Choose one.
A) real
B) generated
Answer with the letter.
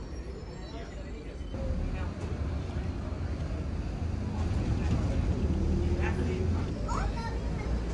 A